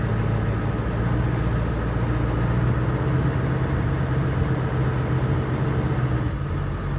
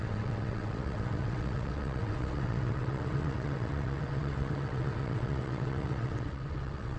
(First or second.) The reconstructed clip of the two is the second